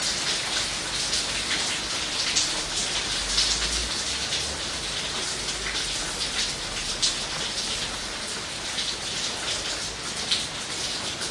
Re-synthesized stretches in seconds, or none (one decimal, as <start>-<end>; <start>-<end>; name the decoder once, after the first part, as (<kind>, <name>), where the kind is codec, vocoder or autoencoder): none